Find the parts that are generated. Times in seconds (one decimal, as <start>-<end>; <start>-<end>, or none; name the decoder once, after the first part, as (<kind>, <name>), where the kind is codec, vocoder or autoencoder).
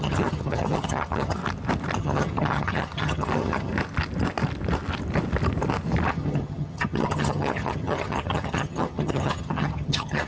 0.0-1.4 (vocoder, HiFi-GAN); 2.0-3.7; 6.1-10.3